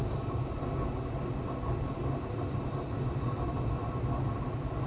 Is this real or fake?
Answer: real